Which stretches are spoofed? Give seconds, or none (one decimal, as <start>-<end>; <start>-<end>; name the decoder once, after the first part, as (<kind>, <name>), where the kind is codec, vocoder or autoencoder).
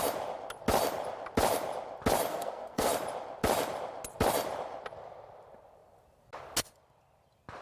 2.3-2.9 (codec, SNAC)